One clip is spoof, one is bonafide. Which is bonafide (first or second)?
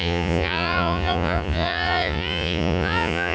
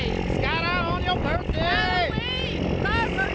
second